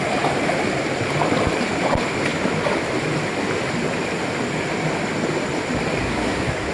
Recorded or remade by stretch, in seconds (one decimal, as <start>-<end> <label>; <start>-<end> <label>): 0.0-6.0 recorded; 6.0-6.7 remade